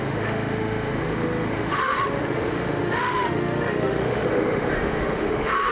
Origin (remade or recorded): remade